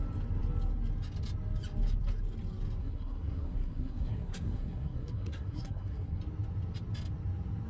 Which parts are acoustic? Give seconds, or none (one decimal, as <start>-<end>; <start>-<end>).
0.0-2.8; 6.2-7.7